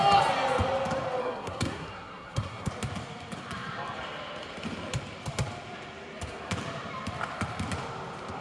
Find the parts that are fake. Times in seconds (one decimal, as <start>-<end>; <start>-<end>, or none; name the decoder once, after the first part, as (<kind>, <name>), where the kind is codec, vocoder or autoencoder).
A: 1.2-2.7 (codec, SNAC)

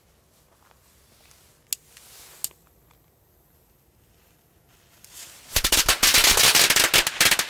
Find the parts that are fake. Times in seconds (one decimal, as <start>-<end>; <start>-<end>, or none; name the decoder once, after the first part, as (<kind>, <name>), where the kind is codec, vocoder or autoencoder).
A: none

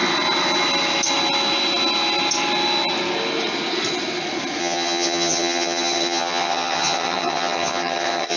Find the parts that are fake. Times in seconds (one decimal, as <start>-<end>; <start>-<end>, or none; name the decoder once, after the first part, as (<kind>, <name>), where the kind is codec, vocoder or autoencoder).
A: 4.6-8.4 (vocoder, HiFi-GAN)